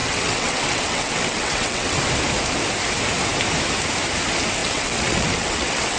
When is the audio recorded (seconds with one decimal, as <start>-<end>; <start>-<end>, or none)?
2.0-4.6